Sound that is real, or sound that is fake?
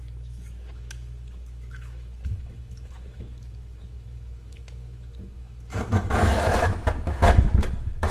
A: fake